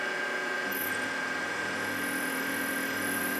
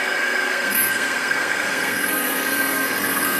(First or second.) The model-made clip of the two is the second